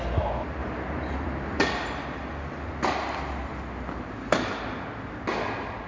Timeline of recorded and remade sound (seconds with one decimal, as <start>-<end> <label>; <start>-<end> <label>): 0.0-5.9 recorded